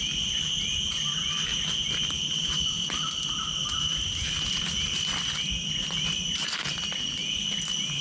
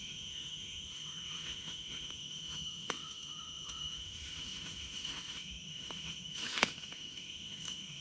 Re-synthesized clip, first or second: second